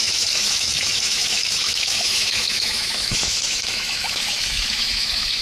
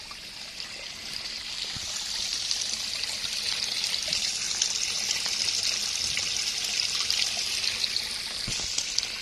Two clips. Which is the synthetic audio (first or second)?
first